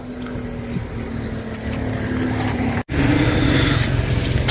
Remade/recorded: recorded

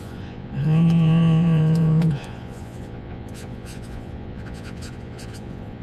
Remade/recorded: remade